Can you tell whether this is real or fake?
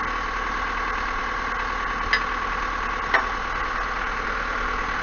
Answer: real